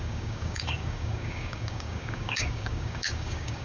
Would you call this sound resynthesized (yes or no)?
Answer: yes